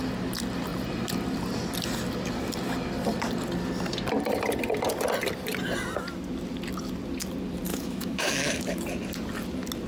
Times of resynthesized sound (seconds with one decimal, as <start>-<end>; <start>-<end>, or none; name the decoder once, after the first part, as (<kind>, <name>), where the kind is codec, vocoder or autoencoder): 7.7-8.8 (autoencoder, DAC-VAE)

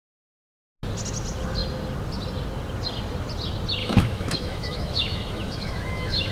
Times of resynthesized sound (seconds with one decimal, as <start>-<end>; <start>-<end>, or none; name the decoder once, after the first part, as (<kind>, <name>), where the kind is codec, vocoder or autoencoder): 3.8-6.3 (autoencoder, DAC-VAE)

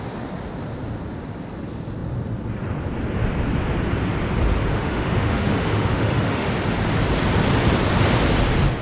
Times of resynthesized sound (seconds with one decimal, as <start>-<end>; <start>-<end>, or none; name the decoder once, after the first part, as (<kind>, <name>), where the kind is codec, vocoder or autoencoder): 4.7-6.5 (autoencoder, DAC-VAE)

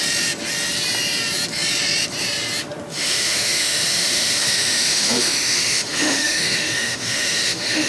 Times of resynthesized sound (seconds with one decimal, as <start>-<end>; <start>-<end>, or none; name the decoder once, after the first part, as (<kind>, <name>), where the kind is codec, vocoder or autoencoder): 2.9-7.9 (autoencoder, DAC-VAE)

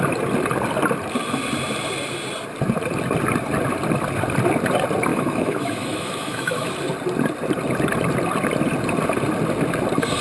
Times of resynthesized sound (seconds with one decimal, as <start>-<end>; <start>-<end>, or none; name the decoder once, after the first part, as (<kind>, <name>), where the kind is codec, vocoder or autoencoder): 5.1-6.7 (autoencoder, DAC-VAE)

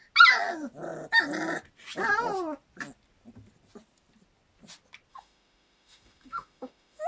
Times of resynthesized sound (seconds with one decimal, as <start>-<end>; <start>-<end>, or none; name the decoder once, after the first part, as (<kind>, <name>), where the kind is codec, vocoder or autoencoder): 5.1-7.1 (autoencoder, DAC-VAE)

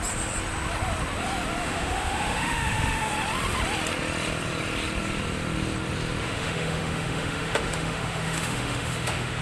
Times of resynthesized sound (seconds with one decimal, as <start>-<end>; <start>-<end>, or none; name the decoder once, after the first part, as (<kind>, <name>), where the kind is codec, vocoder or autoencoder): 1.6-3.1 (autoencoder, DAC-VAE); 6.2-9.4

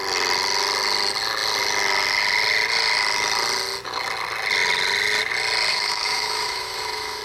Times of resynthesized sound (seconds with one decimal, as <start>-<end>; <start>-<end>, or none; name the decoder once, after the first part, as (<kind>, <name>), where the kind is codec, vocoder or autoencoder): 5.7-7.2 (autoencoder, DAC-VAE)